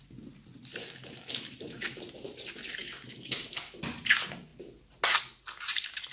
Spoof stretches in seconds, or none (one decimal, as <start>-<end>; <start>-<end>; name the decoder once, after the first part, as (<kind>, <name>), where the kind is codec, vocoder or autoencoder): 0.8-2.0 (autoencoder, DAC-VAE); 2.8-3.8